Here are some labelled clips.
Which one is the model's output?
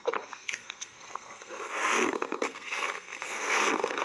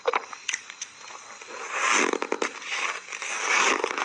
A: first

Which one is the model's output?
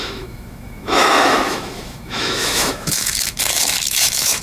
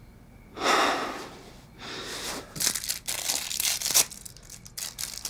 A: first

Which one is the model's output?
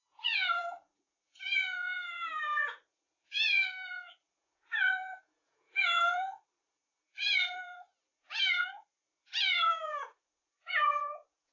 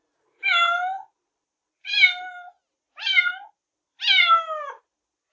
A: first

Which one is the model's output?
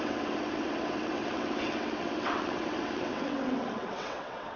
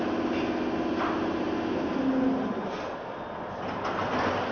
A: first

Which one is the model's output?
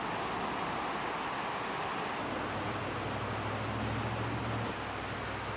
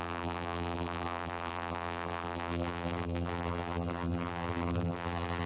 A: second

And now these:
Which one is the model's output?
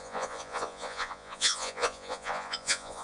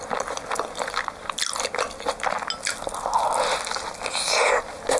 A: first